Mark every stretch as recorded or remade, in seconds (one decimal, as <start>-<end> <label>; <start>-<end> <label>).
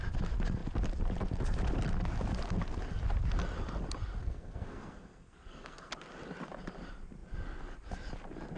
0.0-4.2 recorded; 4.2-5.9 remade; 5.9-8.6 recorded